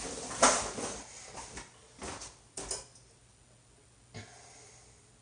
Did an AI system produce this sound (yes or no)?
no